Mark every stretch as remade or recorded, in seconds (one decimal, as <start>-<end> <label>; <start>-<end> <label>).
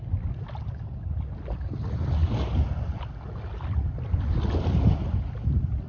0.0-5.9 recorded